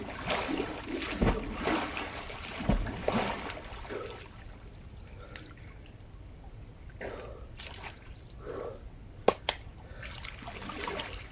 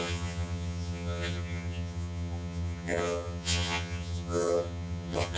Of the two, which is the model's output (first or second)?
second